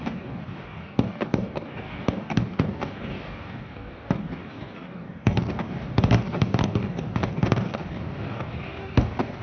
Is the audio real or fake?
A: fake